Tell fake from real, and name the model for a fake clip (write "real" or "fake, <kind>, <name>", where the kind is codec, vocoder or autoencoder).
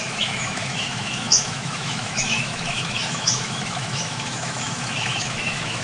fake, autoencoder, DAC-VAE